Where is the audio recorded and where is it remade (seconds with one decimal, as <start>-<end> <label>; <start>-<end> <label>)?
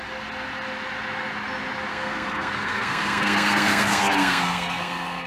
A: 0.0-1.9 recorded; 1.9-5.3 remade